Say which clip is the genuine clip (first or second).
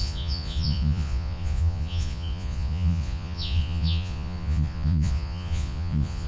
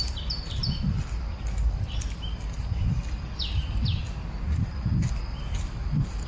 second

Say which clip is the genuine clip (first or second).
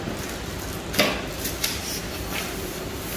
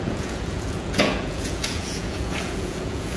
first